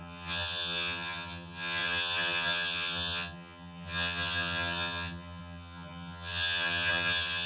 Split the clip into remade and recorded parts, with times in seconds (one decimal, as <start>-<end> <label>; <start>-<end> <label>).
0.0-7.5 remade